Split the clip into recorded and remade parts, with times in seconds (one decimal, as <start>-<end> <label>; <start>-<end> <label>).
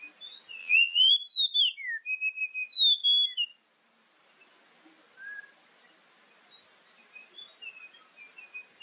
0.0-0.6 recorded; 0.6-1.1 remade; 1.1-8.8 recorded